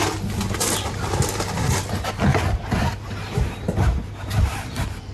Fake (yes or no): no